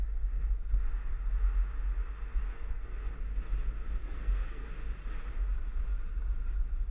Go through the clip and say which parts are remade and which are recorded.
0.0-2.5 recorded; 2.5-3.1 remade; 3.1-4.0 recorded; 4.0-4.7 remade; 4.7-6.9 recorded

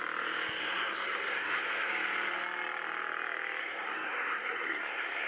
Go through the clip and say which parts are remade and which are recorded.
0.0-0.6 recorded; 0.6-1.9 remade; 1.9-3.6 recorded; 3.6-5.3 remade

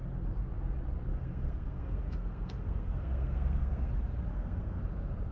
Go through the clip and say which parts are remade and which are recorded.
0.0-1.1 recorded; 1.1-3.9 remade; 3.9-4.3 recorded; 4.3-4.8 remade; 4.8-5.3 recorded

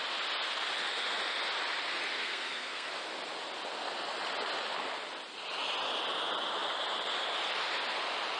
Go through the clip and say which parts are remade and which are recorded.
0.0-2.1 recorded; 2.1-2.9 remade; 2.9-8.4 recorded